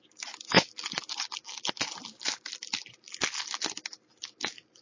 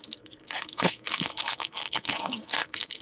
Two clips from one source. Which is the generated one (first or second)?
second